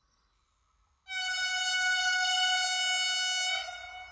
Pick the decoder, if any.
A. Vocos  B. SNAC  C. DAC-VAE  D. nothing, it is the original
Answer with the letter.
D